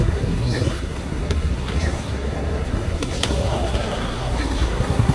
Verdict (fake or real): fake